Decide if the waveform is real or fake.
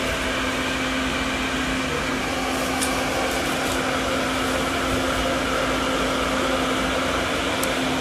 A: real